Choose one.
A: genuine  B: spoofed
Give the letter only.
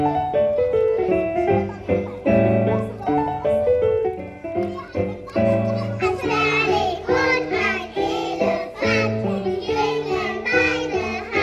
B